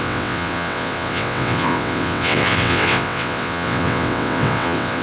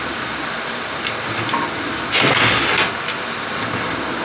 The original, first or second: second